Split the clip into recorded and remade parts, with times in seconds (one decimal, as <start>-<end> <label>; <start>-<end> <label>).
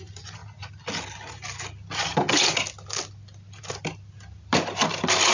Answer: 0.0-5.3 recorded